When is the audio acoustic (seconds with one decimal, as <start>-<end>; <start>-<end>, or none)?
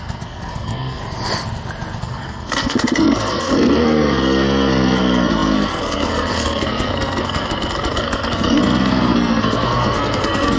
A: 1.0-2.0